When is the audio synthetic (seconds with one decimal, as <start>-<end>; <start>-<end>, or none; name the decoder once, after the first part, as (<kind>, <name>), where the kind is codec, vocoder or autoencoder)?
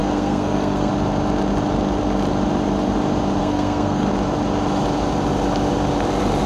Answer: 0.0-0.9 (codec, SNAC); 3.4-4.1